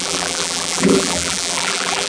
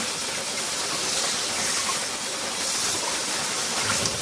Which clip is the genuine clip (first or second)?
second